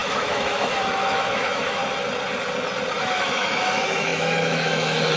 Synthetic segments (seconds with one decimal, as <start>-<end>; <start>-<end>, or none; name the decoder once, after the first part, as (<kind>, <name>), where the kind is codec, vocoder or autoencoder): 0.0-1.8 (autoencoder, DAC-VAE); 3.0-5.2